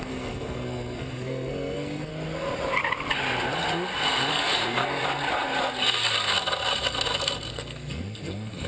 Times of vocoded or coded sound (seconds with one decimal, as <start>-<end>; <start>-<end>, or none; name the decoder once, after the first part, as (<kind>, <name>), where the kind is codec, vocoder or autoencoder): 0.0-2.1 (codec, SNAC); 4.3-5.0; 7.5-8.7